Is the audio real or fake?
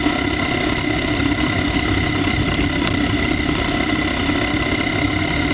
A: real